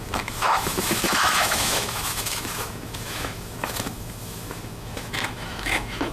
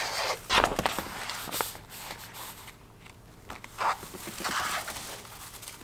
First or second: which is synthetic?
first